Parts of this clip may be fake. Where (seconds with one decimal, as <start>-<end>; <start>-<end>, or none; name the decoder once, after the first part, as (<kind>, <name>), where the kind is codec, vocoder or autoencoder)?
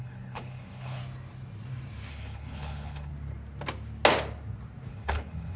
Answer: 0.0-1.0 (codec, HILCodec); 2.1-3.1; 4.9-5.6